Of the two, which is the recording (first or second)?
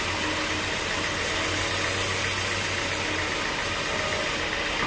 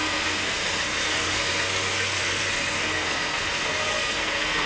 first